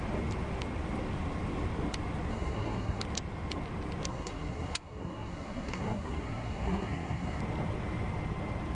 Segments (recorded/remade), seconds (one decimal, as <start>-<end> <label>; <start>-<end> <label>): 0.0-2.3 recorded; 2.3-3.0 remade; 3.0-4.1 recorded; 4.1-7.4 remade; 7.4-8.7 recorded